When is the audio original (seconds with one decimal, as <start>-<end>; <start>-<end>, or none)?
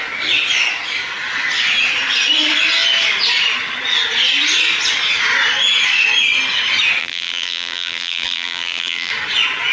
0.0-7.0; 9.1-9.7